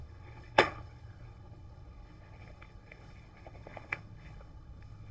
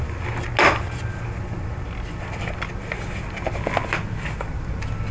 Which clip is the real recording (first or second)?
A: second